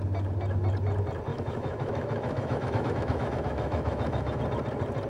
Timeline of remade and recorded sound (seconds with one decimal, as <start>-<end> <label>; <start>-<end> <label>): 0.0-1.3 recorded; 1.3-4.4 remade; 4.4-5.1 recorded